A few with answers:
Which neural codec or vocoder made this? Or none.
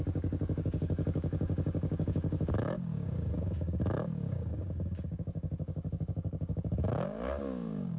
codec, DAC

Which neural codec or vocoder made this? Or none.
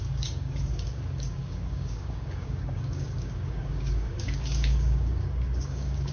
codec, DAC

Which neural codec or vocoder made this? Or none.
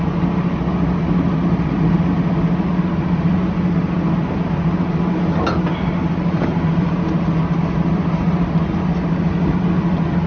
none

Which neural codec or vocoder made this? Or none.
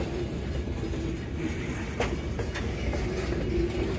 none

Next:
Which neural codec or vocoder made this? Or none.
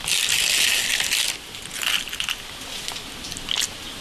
none